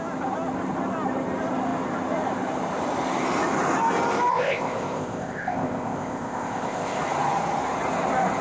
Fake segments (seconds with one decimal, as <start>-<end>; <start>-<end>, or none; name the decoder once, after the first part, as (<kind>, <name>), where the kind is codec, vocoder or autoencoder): 4.3-7.0 (codec, ZipCodec)